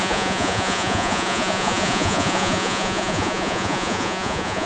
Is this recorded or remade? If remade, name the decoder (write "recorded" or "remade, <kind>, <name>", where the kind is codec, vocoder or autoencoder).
remade, vocoder, Vocos